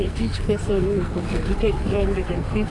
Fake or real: fake